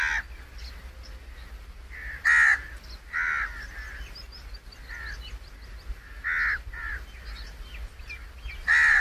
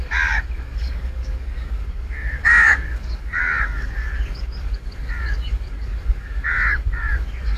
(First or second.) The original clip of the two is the first